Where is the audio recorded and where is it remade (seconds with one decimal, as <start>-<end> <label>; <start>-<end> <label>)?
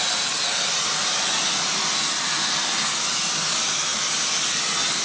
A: 0.0-5.0 recorded